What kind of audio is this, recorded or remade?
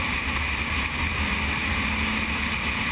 recorded